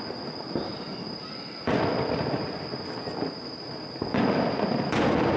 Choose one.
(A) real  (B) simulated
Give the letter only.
A